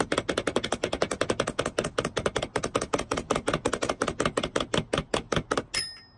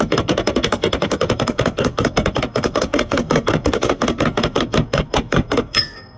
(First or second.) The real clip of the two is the first